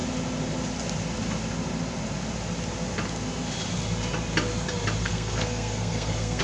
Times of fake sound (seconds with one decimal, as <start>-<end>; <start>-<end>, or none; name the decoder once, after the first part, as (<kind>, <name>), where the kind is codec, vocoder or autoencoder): 5.0-6.4 (codec, SNAC)